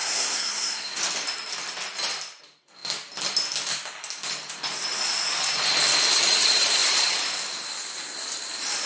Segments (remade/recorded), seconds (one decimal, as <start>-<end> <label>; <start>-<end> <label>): 0.0-1.0 remade; 1.0-8.9 recorded